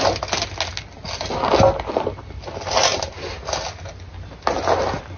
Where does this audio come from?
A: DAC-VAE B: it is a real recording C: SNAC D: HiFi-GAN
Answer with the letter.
B